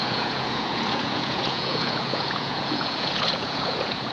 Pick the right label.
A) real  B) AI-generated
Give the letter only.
B